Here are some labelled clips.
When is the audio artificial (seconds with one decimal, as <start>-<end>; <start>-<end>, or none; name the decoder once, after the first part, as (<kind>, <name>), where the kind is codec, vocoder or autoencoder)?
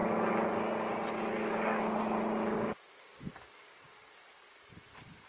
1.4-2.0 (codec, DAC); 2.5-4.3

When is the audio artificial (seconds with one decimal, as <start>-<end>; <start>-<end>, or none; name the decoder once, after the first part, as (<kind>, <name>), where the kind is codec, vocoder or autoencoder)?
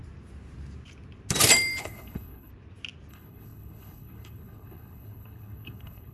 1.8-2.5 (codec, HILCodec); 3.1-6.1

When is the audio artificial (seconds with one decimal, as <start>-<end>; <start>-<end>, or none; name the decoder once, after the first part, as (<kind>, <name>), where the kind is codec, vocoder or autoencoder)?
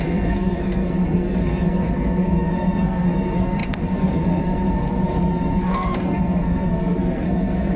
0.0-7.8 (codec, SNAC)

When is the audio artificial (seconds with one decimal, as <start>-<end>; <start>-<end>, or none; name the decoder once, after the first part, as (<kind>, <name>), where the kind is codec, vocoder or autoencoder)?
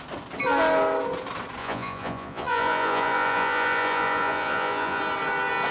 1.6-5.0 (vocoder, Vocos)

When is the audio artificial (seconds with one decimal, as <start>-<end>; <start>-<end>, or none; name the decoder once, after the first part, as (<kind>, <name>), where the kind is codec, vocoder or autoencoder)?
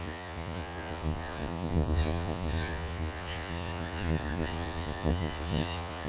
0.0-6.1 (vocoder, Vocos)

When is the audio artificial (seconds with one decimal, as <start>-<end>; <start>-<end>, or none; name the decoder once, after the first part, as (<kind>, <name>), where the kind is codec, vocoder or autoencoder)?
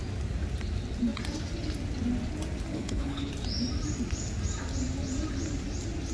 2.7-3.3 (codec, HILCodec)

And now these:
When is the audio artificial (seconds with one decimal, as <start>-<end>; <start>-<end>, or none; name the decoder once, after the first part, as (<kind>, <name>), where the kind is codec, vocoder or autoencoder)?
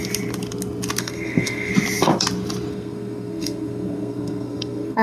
1.0-1.7 (codec, SNAC); 2.7-5.0